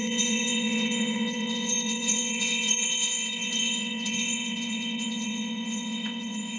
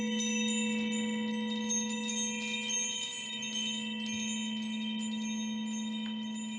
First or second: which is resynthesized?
first